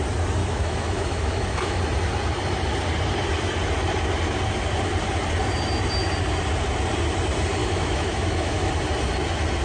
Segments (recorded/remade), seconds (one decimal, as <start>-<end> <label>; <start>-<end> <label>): 0.0-0.4 recorded; 0.4-1.8 remade; 1.8-7.6 recorded; 7.6-8.7 remade; 8.7-9.6 recorded